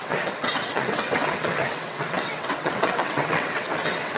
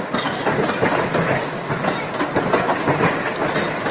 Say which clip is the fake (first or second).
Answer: first